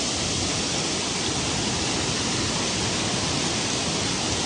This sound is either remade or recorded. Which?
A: recorded